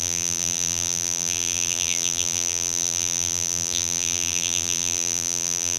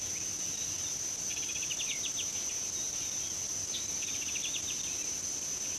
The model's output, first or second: first